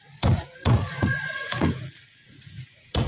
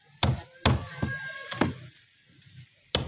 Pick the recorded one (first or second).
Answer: second